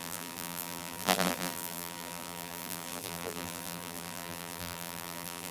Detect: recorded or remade remade